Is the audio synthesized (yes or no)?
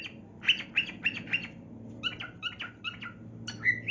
no